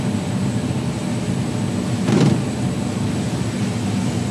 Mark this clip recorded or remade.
recorded